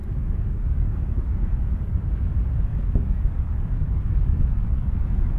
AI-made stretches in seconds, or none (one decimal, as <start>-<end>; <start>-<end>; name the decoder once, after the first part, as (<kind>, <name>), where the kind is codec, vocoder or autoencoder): 0.0-2.3 (codec, DAC); 2.7-5.4